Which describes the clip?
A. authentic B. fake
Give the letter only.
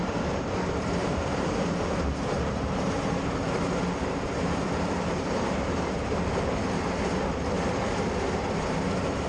B